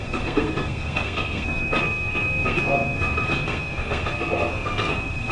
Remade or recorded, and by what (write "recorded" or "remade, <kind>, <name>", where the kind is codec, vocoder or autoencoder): remade, codec, SNAC